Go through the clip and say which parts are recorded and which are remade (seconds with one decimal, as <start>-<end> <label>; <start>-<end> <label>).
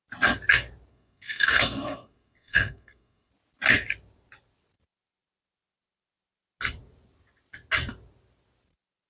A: 0.0-0.9 recorded; 0.9-3.3 remade; 3.3-9.1 recorded